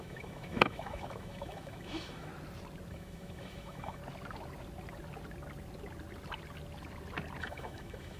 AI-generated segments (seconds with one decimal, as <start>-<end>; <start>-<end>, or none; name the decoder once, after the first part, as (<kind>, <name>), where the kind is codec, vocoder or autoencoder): 0.0-2.3 (autoencoder, DAC-VAE); 2.9-4.0; 7.4-8.2